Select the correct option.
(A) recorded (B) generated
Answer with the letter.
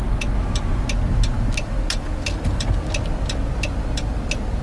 A